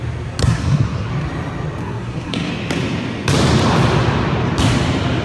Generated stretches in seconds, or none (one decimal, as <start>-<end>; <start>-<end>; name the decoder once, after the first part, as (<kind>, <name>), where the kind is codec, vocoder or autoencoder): 0.4-1.1 (codec, SNAC); 1.8-2.5